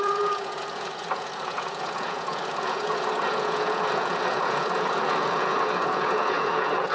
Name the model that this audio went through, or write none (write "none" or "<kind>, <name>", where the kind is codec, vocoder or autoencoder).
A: vocoder, Vocos